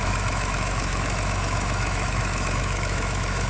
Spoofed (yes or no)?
yes